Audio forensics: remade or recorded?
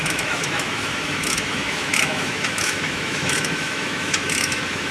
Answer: remade